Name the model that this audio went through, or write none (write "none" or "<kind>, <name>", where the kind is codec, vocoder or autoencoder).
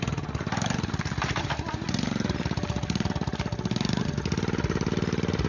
none